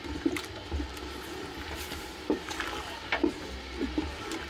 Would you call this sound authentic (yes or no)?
yes